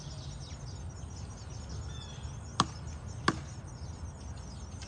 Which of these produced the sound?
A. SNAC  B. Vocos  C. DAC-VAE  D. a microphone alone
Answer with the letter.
D